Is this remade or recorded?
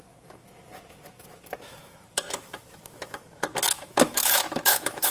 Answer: remade